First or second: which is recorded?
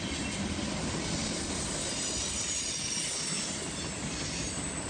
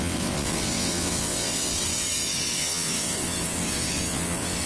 first